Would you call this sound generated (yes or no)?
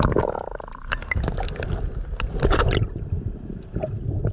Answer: no